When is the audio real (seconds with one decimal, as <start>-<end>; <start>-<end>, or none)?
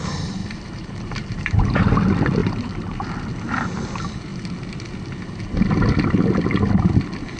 0.0-0.4; 1.8-2.4; 3.1-7.4